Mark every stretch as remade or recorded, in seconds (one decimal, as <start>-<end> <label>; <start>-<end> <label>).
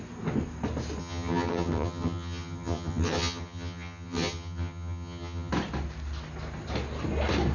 0.0-1.0 recorded; 1.0-5.5 remade; 5.5-7.5 recorded